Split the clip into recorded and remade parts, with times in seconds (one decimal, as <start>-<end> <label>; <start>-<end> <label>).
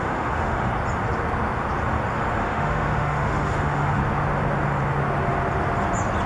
0.0-0.7 remade; 0.7-2.4 recorded; 2.4-4.0 remade; 4.0-6.3 recorded